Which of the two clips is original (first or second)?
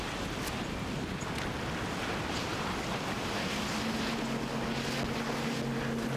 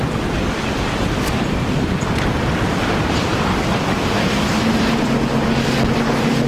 first